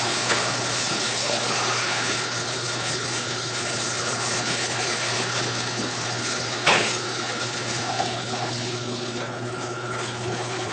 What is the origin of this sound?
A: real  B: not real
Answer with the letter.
B